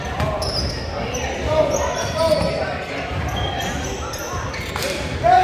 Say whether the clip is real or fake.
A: real